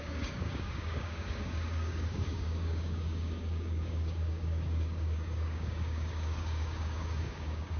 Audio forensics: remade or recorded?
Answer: remade